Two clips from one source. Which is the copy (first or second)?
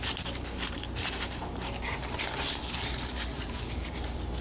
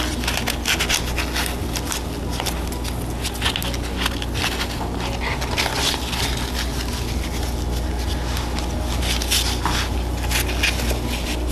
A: first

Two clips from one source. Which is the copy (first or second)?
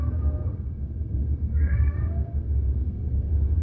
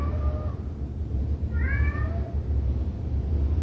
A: first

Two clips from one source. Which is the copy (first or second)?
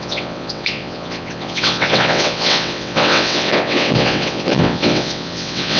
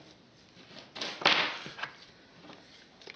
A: first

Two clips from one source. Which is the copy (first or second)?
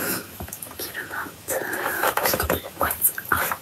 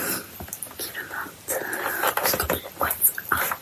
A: first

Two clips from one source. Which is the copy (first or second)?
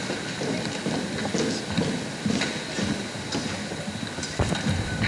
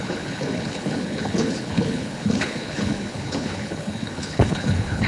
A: second